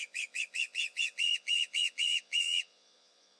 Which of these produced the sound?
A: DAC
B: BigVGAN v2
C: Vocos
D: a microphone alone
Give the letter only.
C